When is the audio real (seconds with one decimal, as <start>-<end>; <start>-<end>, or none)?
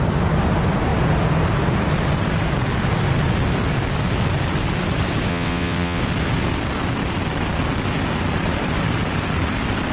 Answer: 0.0-5.3; 6.0-9.9